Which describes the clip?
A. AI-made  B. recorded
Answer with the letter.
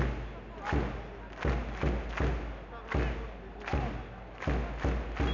B